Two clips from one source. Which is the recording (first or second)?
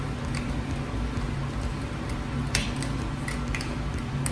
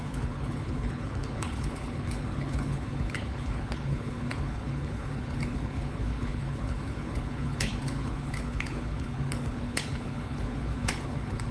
first